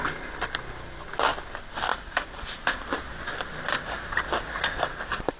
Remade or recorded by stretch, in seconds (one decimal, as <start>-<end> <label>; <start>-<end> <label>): 0.0-1.9 recorded; 1.9-3.0 remade; 3.0-3.7 recorded; 3.7-5.4 remade